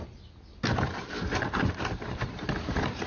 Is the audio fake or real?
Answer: real